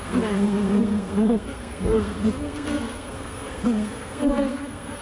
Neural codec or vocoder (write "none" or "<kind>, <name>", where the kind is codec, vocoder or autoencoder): codec, SNAC